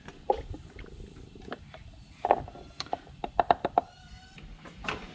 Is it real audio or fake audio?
fake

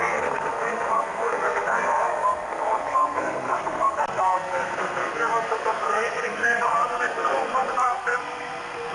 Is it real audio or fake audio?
fake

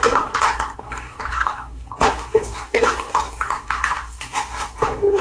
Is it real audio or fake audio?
fake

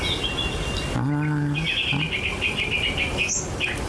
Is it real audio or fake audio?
real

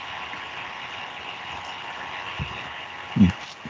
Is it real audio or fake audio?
real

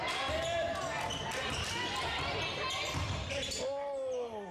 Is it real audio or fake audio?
real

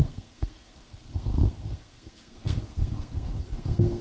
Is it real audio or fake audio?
fake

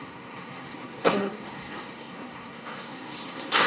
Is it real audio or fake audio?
fake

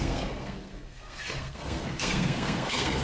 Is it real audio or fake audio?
fake